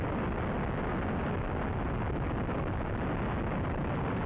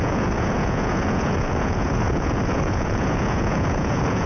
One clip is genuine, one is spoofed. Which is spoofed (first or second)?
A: second